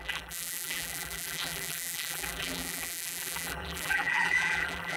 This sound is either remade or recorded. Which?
remade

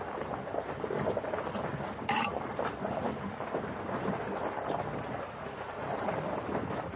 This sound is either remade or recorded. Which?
remade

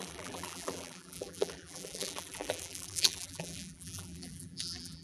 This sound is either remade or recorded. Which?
remade